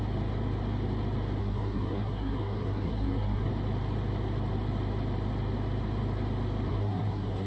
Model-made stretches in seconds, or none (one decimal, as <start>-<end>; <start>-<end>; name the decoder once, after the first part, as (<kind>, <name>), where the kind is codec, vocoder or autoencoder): 1.4-3.5 (codec, SNAC); 6.7-7.5